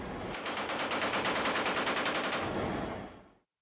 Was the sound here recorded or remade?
recorded